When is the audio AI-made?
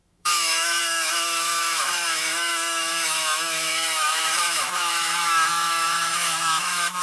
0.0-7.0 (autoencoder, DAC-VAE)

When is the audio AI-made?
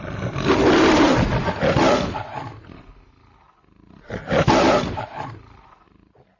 0.0-1.3 (vocoder, BigVGAN v2); 4.5-6.4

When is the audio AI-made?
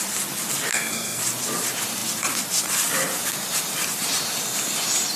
0.7-1.2 (codec, SNAC)